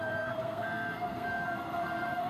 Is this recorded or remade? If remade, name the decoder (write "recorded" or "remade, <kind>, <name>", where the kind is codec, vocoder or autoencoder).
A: remade, codec, SNAC